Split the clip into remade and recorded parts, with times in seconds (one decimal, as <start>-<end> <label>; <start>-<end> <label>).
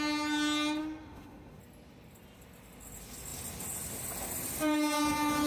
0.0-0.8 recorded; 0.8-1.6 remade; 1.6-5.5 recorded